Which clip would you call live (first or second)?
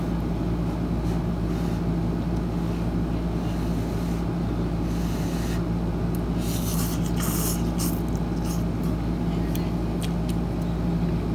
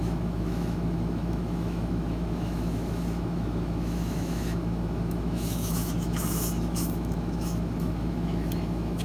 first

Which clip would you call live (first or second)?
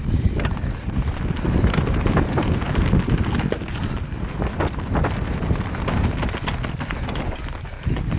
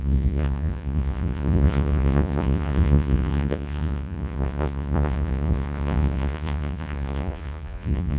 first